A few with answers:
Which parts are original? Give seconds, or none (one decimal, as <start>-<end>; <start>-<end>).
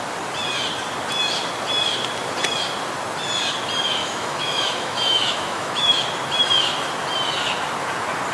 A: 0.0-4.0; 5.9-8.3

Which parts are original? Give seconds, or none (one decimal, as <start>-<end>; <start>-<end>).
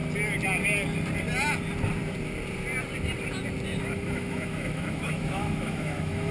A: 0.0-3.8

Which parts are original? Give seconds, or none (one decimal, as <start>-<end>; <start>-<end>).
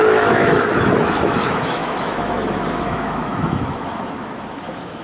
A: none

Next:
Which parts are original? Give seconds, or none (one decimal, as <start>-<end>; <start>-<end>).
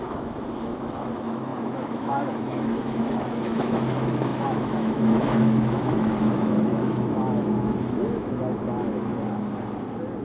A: 9.1-10.2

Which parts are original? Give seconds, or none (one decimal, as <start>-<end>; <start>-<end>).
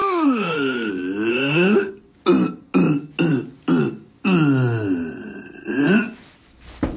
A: 0.9-1.3; 1.9-7.0